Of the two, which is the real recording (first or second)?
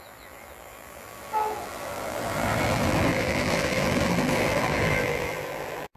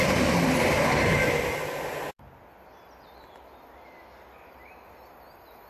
second